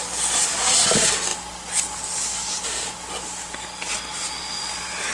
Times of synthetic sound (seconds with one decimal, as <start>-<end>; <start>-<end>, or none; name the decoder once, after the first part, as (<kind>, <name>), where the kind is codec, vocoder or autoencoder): none